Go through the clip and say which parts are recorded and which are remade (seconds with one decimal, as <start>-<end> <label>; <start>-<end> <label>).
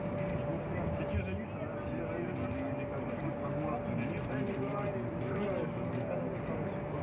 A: 0.0-7.0 recorded